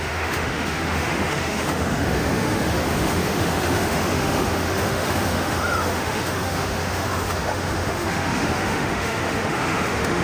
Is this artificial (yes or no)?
yes